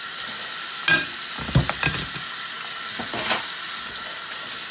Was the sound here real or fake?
real